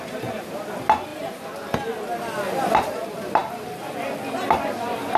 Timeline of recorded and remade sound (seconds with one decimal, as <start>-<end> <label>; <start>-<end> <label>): 0.0-5.2 recorded